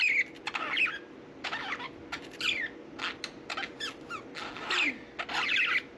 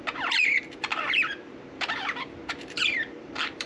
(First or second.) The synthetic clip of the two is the second